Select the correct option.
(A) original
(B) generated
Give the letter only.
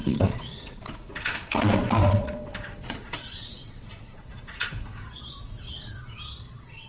B